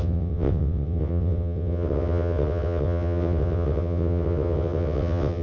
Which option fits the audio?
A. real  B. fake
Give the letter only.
B